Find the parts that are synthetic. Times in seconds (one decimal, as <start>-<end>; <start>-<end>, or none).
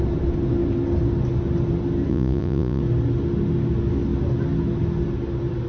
2.1-2.8